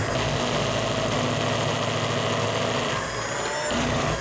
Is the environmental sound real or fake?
real